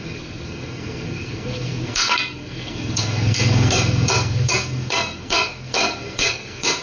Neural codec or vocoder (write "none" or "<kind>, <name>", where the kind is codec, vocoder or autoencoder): codec, SNAC